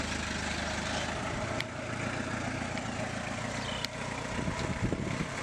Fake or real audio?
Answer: real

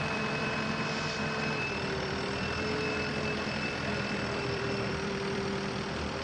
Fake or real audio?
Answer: fake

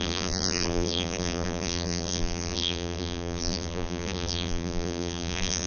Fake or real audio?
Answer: fake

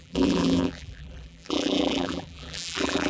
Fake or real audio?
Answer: fake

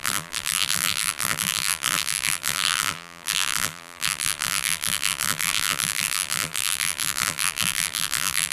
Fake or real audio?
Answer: fake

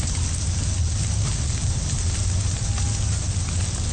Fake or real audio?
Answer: real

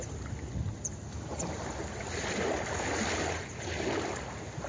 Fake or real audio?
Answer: real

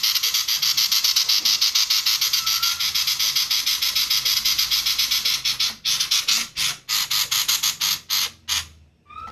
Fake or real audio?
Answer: real